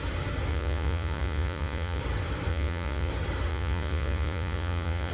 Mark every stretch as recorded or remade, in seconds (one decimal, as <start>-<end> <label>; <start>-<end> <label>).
0.0-0.5 recorded; 0.5-2.0 remade; 2.0-2.5 recorded; 2.5-3.1 remade; 3.1-3.5 recorded; 3.5-5.1 remade